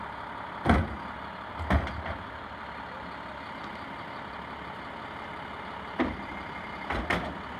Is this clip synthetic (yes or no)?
no